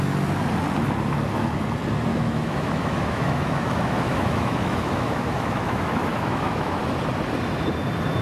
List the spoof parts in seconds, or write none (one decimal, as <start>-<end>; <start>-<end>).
2.1-6.8